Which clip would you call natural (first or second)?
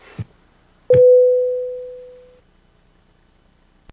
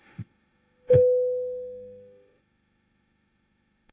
first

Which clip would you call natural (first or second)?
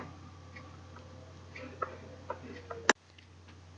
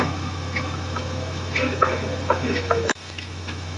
first